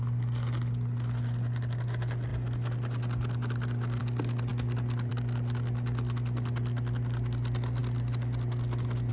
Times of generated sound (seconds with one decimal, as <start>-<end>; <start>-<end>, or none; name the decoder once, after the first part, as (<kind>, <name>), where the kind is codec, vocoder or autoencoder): none